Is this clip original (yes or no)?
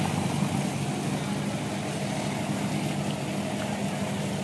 yes